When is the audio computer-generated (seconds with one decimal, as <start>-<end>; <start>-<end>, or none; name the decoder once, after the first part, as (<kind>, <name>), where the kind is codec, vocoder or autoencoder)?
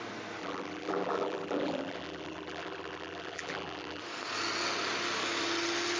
0.4-4.0 (vocoder, BigVGAN v2)